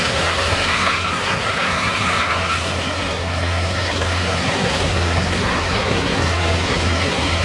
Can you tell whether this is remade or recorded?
remade